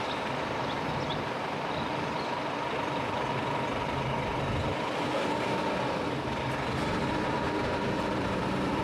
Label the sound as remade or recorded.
remade